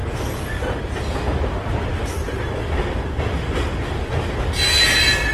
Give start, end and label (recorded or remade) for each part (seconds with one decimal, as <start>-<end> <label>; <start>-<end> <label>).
0.0-5.3 recorded